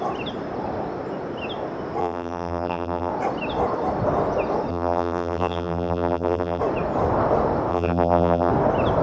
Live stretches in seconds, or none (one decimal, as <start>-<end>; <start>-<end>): 0.0-2.0; 3.1-4.7; 6.6-7.7; 8.5-9.0

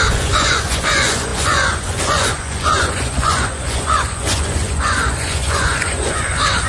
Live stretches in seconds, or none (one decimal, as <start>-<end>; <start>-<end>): none